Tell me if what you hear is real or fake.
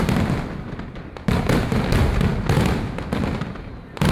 real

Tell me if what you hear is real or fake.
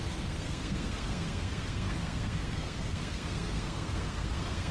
fake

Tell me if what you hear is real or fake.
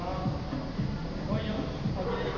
real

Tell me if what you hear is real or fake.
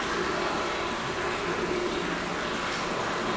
real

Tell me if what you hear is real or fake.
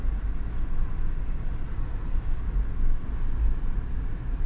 real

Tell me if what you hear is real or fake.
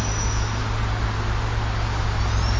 real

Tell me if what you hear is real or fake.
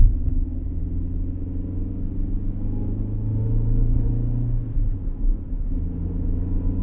real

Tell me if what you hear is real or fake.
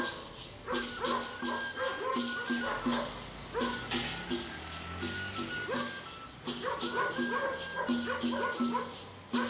real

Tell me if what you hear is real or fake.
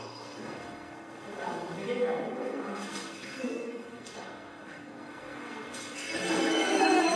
fake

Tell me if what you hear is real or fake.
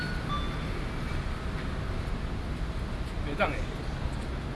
real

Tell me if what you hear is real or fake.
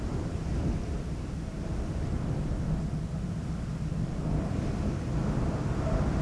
real